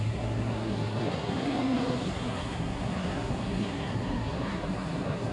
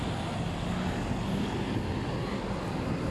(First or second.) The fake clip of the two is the first